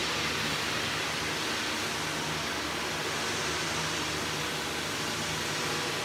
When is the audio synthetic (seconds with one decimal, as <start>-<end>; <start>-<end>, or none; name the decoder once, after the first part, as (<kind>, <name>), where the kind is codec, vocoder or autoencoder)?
0.0-1.3 (vocoder, BigVGAN v2)